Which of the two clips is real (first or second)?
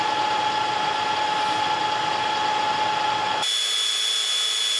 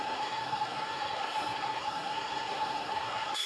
first